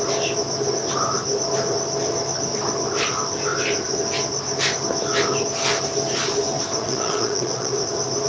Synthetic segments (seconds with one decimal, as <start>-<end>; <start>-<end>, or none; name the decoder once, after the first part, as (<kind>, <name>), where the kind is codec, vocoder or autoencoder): 6.8-7.7 (vocoder, Vocos)